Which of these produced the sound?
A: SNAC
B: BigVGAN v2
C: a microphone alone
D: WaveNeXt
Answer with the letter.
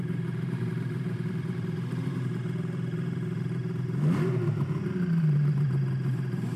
B